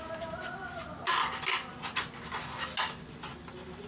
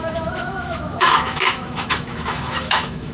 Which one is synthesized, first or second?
second